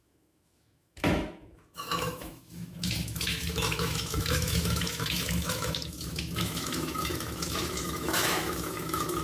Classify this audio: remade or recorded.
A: remade